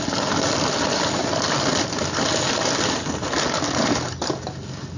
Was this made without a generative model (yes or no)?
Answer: yes